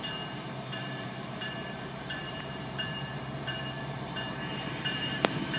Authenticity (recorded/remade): remade